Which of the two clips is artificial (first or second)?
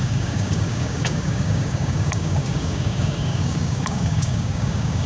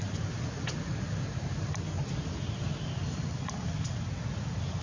first